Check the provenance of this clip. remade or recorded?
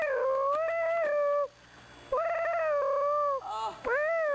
recorded